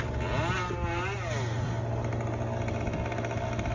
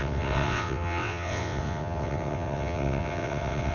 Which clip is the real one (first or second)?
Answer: first